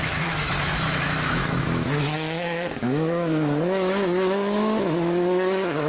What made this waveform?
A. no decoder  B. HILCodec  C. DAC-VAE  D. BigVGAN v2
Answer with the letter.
C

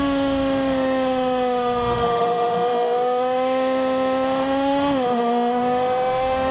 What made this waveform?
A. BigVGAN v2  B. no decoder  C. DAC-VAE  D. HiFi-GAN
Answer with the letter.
C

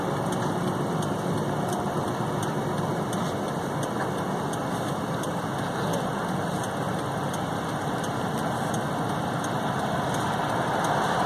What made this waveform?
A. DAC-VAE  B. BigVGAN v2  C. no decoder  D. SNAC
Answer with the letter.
C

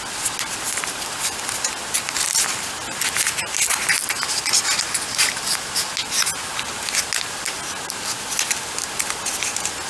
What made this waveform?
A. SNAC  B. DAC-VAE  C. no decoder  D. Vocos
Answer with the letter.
C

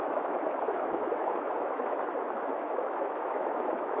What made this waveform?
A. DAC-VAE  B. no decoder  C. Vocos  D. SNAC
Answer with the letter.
A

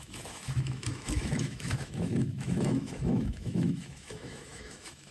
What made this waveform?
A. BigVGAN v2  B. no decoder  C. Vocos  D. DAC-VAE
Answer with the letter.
D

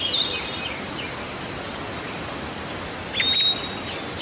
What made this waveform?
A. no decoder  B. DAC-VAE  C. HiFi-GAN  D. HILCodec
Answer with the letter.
A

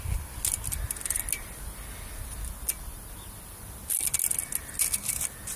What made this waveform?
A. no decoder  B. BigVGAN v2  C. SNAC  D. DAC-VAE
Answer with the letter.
A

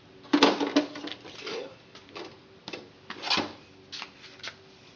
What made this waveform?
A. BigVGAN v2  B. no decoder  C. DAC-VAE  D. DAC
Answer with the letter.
B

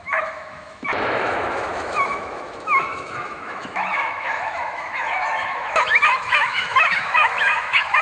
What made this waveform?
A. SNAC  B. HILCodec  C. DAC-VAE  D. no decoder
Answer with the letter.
C